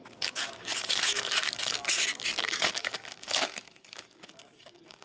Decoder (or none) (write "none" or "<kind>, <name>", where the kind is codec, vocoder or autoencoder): codec, DAC